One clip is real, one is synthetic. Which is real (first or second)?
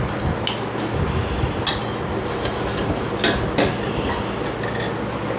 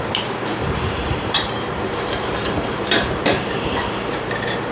first